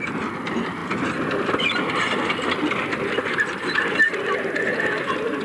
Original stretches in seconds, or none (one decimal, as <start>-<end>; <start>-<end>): 0.0-5.4